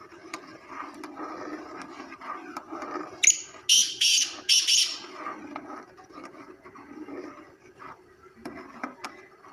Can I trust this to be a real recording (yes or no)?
yes